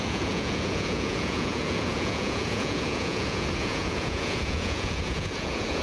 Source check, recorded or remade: remade